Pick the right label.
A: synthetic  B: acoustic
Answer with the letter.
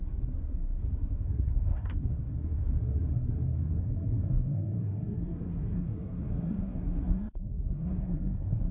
A